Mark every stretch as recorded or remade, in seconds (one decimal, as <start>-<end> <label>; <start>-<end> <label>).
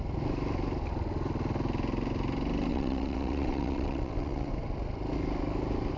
0.0-2.7 recorded; 2.7-4.5 remade; 4.5-6.0 recorded